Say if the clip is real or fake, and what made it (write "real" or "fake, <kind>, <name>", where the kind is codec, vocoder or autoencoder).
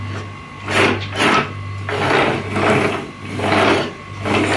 real